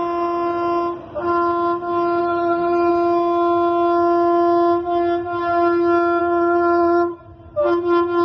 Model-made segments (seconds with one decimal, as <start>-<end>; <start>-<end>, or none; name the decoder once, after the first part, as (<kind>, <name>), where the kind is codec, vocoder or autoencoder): 2.2-2.9 (vocoder, HiFi-GAN); 6.2-7.2